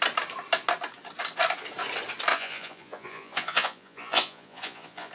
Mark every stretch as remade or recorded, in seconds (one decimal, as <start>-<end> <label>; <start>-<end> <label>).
0.0-2.3 recorded; 2.3-5.1 remade